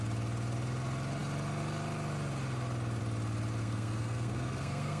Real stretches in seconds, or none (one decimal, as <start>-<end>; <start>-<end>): 0.0-3.6